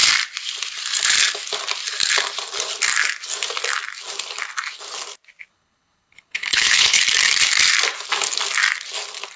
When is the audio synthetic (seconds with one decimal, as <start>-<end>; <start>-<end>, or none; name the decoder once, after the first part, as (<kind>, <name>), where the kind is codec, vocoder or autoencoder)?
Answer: 5.5-7.0 (codec, HILCodec)